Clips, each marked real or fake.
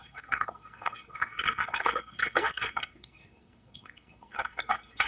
fake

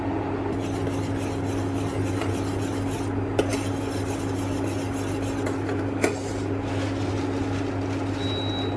real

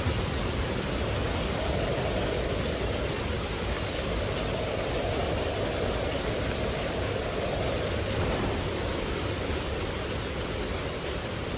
real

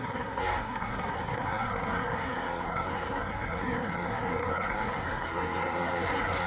fake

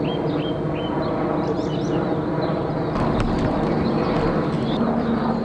real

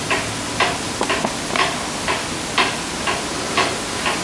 real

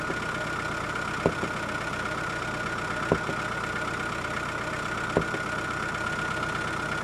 real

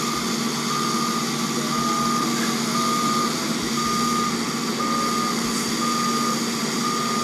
real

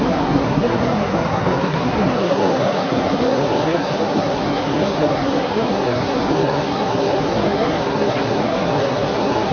fake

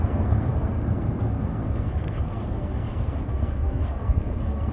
fake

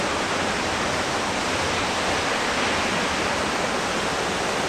real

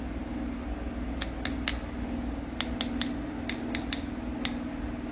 real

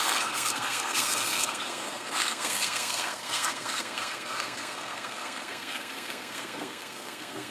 fake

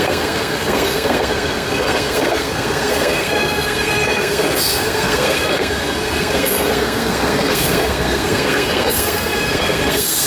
fake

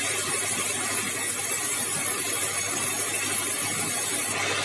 real